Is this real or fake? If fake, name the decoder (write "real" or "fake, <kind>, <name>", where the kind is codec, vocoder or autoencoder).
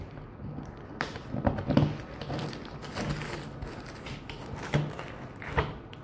real